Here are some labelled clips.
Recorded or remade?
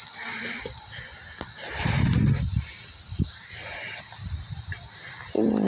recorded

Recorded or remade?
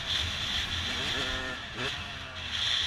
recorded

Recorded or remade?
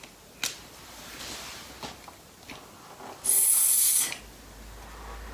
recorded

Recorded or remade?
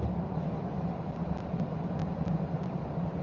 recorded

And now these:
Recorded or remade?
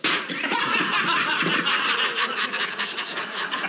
remade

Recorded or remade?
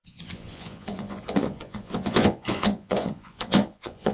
remade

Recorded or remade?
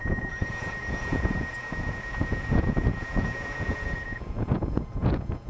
remade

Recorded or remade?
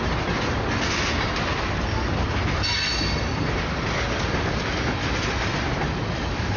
recorded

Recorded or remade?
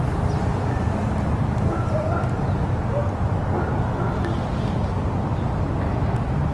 recorded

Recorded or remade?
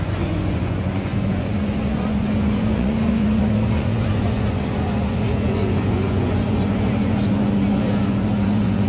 remade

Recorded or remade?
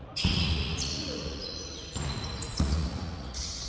remade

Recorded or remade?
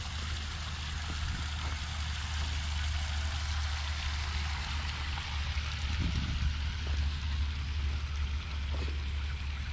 recorded